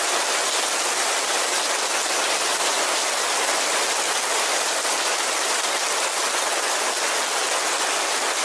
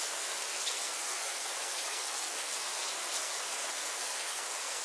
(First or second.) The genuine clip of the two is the first